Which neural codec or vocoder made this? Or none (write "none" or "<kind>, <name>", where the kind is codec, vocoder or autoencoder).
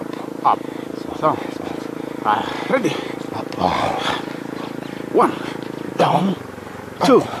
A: none